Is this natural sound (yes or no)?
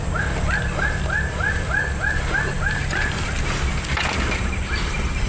yes